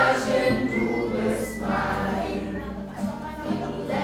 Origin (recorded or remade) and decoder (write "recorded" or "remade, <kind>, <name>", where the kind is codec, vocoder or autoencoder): recorded